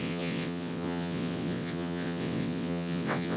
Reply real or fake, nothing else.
fake